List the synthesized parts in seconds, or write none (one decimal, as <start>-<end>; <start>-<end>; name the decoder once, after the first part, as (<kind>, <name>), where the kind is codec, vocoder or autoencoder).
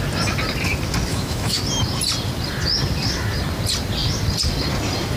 1.1-1.6 (autoencoder, DAC-VAE)